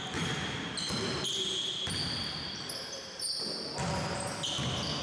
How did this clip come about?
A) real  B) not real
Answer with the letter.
A